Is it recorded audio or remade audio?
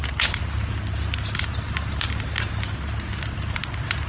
recorded